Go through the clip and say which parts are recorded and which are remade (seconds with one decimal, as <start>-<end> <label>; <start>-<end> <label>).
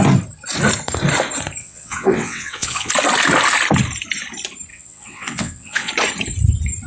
0.0-1.6 recorded; 1.6-2.9 remade; 2.9-4.7 recorded; 4.7-5.9 remade; 5.9-6.9 recorded